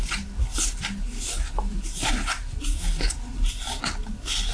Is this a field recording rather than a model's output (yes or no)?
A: yes